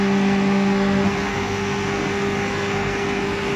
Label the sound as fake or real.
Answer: fake